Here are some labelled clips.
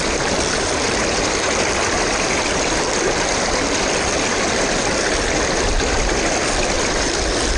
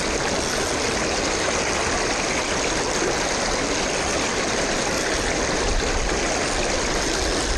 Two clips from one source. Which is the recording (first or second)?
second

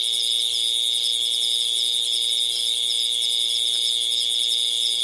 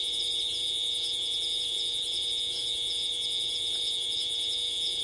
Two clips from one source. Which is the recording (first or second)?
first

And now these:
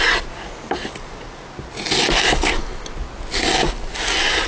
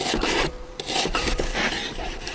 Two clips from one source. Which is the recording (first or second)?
first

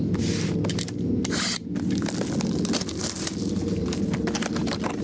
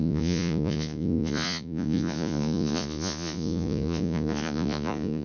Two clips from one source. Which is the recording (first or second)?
first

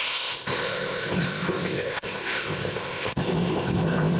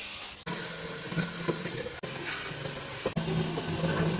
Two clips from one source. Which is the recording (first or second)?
second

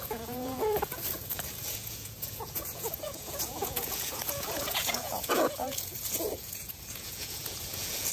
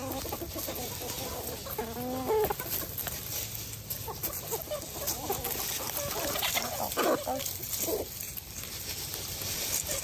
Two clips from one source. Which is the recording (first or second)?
second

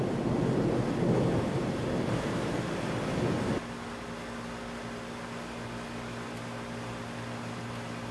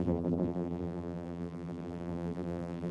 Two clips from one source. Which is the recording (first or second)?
first